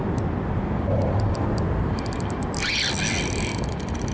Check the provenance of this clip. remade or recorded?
recorded